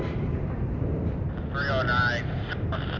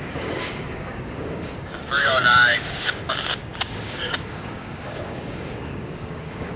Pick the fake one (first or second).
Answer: second